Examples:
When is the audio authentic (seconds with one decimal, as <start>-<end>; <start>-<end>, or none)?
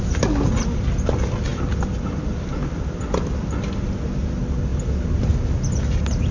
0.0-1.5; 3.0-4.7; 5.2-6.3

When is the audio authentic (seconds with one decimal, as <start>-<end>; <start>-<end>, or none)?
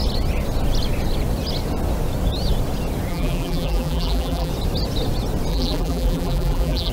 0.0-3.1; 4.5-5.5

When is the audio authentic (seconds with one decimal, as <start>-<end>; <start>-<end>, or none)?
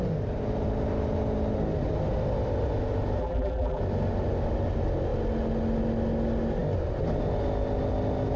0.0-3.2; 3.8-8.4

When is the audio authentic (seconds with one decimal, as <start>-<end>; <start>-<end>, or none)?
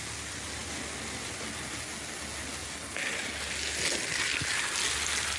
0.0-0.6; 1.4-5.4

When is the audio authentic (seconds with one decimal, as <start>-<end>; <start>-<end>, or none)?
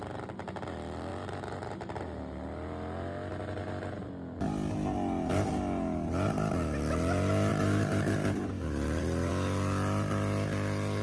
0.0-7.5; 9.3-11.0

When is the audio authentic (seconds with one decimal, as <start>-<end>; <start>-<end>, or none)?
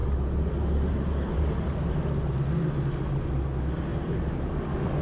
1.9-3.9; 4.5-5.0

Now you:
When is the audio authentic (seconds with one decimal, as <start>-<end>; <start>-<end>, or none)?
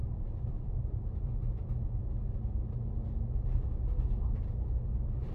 1.6-4.8